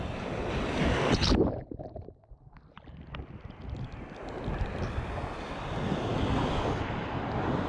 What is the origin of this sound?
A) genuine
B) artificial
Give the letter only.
A